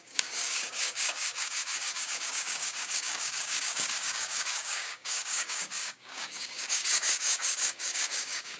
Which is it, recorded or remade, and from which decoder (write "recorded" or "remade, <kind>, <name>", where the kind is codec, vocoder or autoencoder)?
remade, codec, DAC